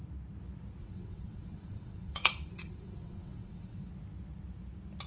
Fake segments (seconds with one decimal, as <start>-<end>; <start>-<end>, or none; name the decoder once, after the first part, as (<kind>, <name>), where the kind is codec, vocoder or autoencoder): 0.8-3.9 (vocoder, WaveNeXt)